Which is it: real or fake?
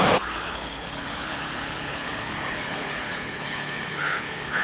fake